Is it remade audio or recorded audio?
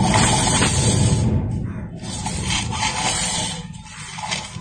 recorded